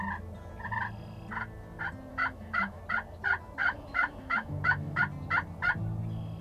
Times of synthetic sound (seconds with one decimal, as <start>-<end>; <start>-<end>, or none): 2.1-2.8; 3.6-5.0